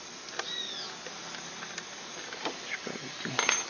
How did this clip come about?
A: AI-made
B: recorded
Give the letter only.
B